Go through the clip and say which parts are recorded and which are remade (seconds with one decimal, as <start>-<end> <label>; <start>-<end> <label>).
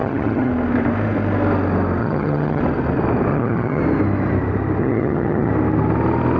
0.0-0.5 remade; 0.5-2.0 recorded; 2.0-2.6 remade; 2.6-3.3 recorded; 3.3-3.8 remade; 3.8-4.8 recorded; 4.8-5.5 remade; 5.5-6.4 recorded